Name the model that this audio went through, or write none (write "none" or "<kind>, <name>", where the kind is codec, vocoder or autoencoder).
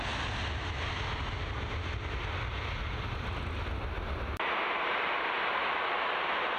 none